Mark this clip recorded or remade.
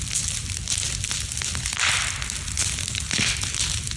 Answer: recorded